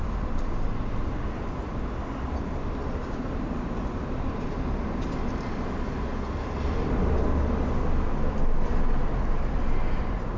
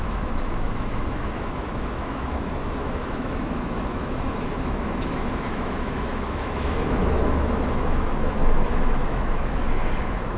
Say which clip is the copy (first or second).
second